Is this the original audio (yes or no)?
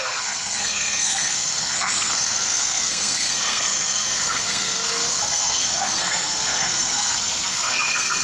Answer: no